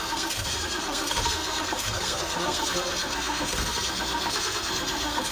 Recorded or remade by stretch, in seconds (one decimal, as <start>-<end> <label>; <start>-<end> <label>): 0.0-5.3 remade